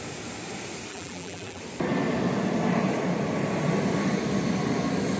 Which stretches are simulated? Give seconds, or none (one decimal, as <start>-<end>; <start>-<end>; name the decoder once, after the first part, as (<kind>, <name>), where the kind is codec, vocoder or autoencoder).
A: 0.9-1.6 (vocoder, BigVGAN v2)